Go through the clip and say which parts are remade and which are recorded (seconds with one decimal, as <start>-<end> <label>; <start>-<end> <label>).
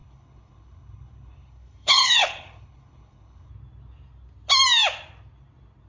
0.0-3.5 remade; 3.5-5.9 recorded